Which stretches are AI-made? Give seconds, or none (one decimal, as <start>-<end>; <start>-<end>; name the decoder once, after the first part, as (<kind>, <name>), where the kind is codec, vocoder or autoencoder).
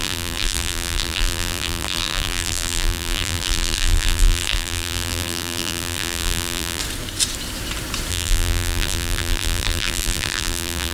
0.0-6.8 (vocoder, BigVGAN v2); 8.1-10.9